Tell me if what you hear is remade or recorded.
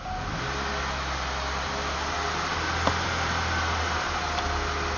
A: recorded